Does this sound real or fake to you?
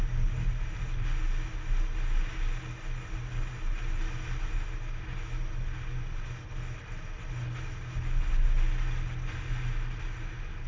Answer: real